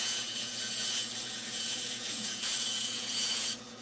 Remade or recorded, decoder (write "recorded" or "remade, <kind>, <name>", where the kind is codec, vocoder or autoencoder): remade, vocoder, Vocos